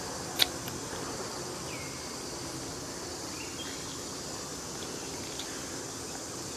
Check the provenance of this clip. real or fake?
real